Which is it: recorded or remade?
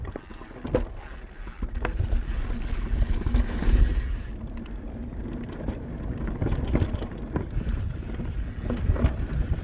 recorded